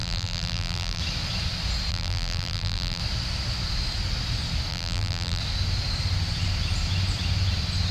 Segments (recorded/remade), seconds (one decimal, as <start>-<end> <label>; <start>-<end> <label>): 0.0-1.0 remade; 1.0-1.9 recorded; 1.9-3.0 remade; 3.0-4.7 recorded; 4.7-5.4 remade; 5.4-7.9 recorded